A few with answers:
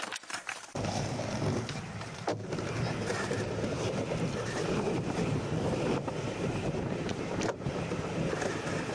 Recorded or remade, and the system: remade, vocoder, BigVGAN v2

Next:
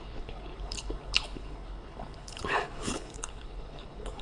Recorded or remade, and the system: remade, codec, HILCodec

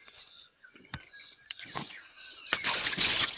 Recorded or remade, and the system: remade, vocoder, Vocos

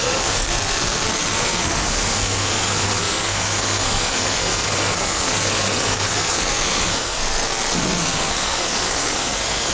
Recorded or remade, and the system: remade, codec, SNAC